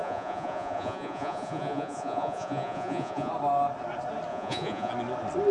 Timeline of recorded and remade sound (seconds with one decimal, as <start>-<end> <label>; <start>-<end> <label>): 0.0-3.3 remade; 3.3-4.3 recorded; 4.3-4.9 remade; 4.9-5.5 recorded